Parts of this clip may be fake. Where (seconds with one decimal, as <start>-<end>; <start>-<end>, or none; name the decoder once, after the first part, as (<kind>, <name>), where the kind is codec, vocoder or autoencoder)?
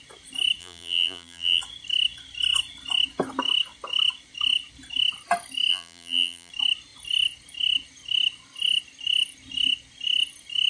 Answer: 0.6-1.6 (vocoder, BigVGAN v2); 5.7-6.5